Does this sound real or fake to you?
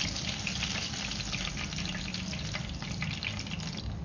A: real